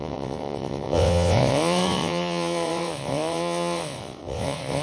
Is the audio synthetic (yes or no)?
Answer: yes